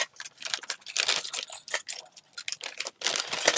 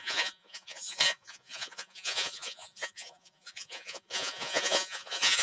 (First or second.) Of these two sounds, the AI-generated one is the second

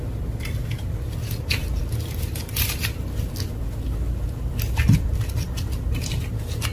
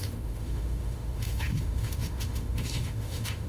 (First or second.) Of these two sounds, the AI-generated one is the second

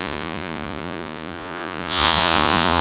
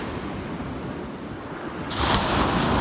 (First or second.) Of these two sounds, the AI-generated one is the first